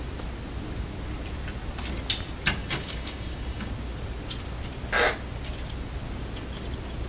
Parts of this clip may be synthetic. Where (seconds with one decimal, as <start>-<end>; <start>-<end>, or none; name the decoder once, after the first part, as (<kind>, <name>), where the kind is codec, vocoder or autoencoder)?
2.6-3.7 (codec, DAC)